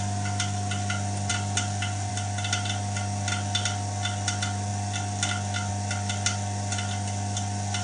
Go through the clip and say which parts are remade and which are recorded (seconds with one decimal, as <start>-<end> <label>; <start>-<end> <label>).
0.0-7.8 recorded